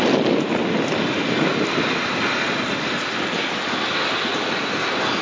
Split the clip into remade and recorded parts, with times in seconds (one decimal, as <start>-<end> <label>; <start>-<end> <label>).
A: 0.0-1.5 recorded; 1.5-4.6 remade; 4.6-5.2 recorded